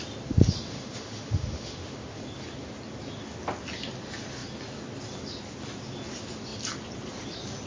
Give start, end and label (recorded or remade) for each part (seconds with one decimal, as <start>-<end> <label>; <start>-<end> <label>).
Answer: 0.0-0.7 recorded; 0.7-2.2 remade; 2.2-7.7 recorded